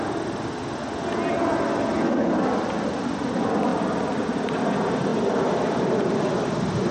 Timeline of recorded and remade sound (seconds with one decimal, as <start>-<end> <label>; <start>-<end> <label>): 0.0-6.9 recorded